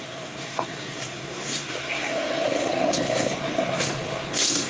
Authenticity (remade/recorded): remade